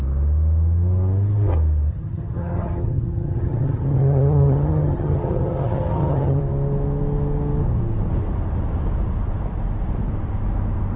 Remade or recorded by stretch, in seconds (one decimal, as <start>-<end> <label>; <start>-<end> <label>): 0.0-1.9 recorded; 1.9-6.4 remade; 6.4-11.0 recorded